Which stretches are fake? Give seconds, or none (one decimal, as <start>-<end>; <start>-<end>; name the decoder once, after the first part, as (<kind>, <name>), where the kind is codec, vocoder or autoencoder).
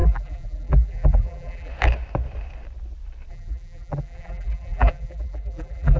0.0-1.7 (vocoder, BigVGAN v2); 3.3-6.0